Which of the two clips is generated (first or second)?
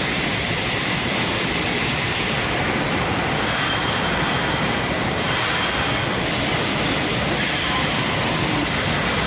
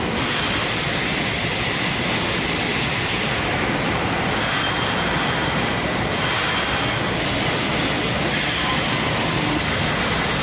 first